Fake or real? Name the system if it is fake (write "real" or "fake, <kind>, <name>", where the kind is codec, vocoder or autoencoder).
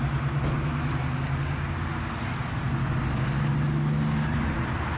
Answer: real